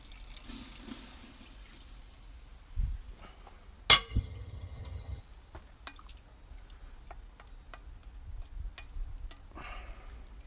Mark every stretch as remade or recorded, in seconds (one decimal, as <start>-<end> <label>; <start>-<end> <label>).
0.0-4.1 recorded; 4.1-5.2 remade; 5.2-10.5 recorded